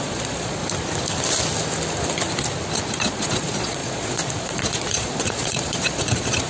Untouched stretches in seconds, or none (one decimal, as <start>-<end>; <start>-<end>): 0.6-3.0